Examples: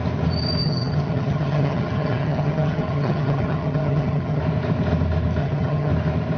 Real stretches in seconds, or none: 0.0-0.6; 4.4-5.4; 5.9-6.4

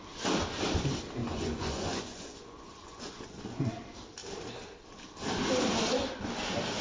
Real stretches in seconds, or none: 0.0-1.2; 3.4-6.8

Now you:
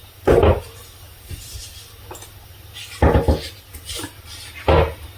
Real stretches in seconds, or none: 0.0-5.2